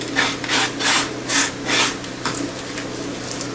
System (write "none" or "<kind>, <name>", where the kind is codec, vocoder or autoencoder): none